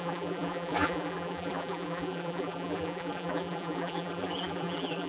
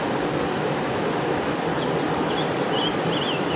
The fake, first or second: first